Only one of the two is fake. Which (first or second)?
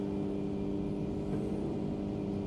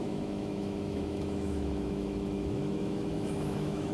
second